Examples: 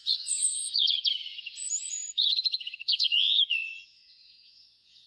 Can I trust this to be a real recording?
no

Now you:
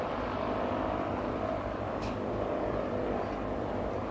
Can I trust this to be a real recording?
no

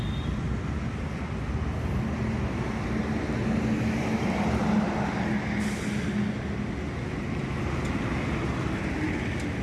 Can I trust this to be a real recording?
yes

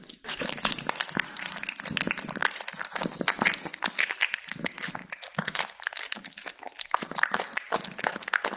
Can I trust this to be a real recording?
yes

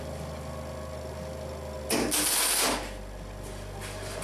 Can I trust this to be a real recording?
yes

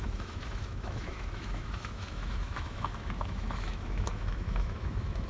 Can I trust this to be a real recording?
no